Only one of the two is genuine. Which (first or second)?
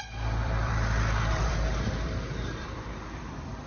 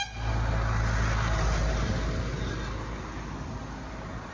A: second